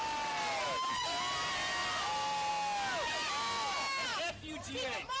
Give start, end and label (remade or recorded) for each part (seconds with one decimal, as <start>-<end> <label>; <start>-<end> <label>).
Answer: 0.0-5.2 recorded